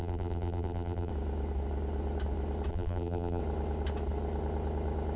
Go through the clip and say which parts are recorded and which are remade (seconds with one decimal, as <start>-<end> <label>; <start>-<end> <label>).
0.0-1.1 remade; 1.1-2.7 recorded; 2.7-3.4 remade; 3.4-5.2 recorded